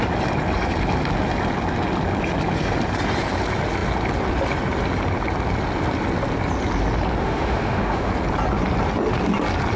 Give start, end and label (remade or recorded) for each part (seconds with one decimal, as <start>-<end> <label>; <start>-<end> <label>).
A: 0.0-7.2 recorded; 7.2-8.1 remade; 8.1-9.8 recorded